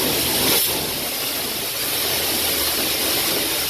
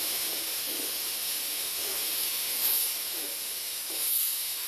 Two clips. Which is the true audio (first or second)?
first